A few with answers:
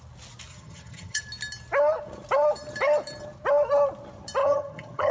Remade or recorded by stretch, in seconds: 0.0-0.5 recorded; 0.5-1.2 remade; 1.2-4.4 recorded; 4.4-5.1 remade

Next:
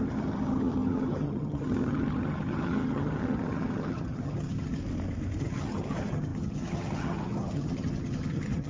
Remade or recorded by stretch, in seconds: 0.0-4.8 remade; 4.8-5.4 recorded; 5.4-8.7 remade